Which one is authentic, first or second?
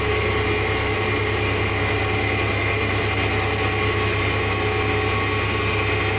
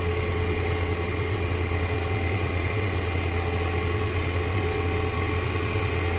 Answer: first